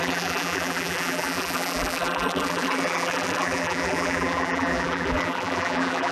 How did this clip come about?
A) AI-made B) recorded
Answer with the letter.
A